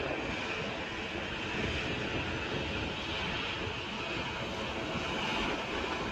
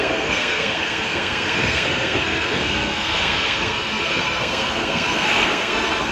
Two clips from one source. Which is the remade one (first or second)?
second